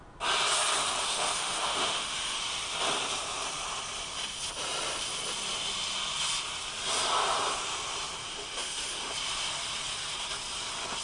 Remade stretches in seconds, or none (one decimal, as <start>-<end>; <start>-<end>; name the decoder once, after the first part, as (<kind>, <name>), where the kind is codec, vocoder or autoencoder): 1.0-2.4 (autoencoder, DAC-VAE); 8.2-9.1